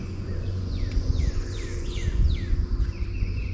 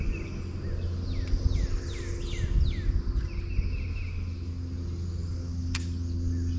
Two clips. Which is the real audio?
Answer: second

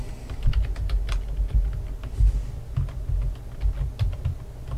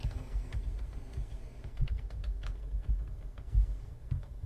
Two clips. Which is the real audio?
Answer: first